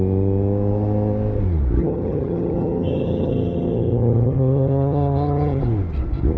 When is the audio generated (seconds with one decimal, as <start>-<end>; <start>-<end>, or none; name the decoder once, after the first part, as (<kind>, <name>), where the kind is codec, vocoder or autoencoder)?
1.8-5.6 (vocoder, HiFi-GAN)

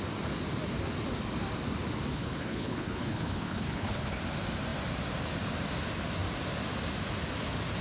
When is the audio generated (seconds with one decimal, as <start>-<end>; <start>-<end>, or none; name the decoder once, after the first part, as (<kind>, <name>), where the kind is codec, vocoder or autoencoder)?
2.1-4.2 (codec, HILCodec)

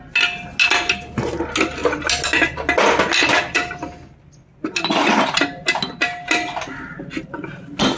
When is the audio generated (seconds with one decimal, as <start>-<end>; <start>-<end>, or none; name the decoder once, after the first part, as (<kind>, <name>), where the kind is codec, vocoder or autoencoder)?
none

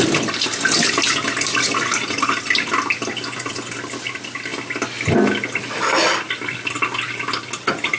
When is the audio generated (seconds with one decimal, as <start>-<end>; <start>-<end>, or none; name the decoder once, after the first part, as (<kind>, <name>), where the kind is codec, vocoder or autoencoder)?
none

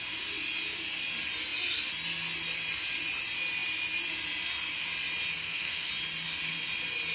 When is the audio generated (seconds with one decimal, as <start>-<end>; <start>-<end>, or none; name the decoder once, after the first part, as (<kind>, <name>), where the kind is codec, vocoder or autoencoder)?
5.4-5.9 (codec, SNAC)